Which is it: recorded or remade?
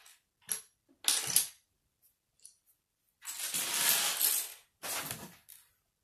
recorded